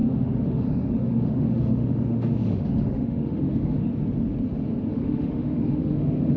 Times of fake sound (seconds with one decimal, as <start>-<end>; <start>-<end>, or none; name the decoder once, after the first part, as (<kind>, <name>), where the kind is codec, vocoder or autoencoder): 0.0-3.9 (autoencoder, DAC-VAE); 4.9-6.4